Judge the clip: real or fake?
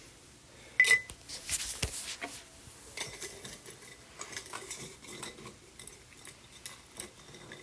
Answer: real